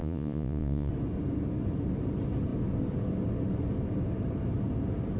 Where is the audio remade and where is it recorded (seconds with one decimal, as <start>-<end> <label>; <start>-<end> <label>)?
0.0-0.9 remade; 0.9-5.2 recorded